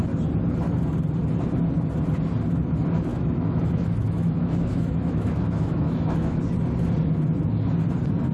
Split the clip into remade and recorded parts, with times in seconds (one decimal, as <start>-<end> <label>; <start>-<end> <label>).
0.0-3.1 recorded; 3.1-6.4 remade; 6.4-8.3 recorded